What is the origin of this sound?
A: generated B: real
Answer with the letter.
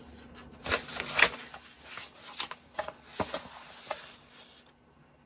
B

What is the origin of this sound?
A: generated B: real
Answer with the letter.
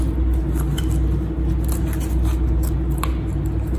B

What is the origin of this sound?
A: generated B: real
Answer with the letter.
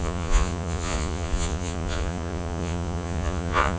A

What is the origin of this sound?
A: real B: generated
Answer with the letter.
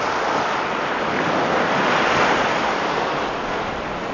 A